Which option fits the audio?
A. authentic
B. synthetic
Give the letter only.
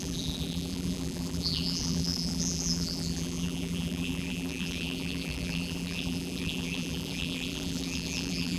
B